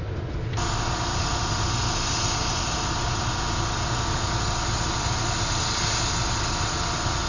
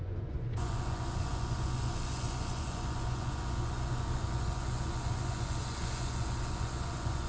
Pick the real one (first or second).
first